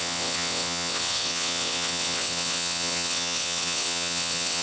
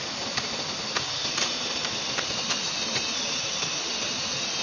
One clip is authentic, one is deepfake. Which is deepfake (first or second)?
first